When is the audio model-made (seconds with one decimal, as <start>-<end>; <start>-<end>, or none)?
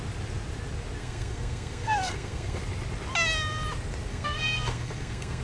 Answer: 1.0-2.6; 4.1-5.4